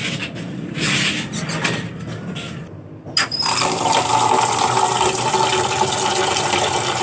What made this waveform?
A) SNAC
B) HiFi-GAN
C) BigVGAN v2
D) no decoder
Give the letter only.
D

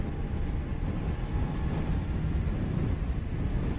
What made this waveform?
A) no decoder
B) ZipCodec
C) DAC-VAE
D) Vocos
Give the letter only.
A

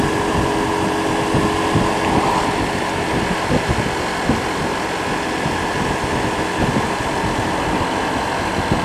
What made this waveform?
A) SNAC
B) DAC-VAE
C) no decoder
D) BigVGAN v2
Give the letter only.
C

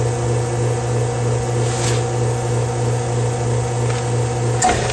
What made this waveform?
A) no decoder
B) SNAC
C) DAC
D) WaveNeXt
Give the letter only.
A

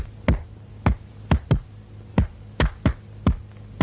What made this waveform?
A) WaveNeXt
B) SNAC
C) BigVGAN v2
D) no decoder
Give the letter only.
D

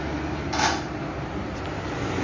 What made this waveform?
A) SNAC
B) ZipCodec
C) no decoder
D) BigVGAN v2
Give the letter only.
C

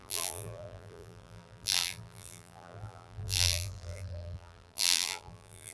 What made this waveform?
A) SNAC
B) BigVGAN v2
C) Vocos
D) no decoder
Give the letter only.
B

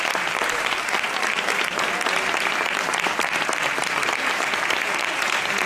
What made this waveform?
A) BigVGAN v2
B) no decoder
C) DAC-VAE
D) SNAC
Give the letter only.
A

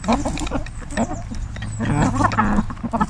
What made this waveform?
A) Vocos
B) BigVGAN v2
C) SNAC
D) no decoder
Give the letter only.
D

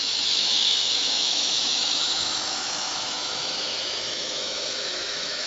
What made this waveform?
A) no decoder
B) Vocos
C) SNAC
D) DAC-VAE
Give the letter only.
D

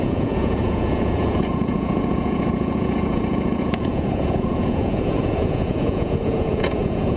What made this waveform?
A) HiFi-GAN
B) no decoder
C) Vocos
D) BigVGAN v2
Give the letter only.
C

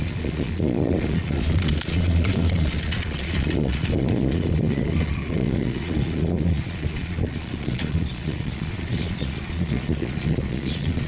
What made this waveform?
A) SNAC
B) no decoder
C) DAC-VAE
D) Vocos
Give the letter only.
D